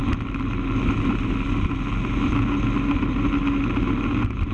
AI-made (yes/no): no